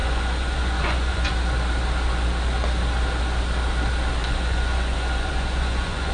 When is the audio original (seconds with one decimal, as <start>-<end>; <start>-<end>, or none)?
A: 1.3-4.2